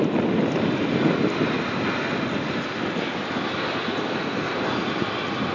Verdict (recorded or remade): recorded